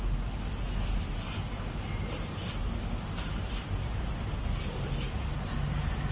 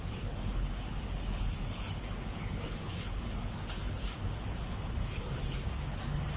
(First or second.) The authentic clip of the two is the first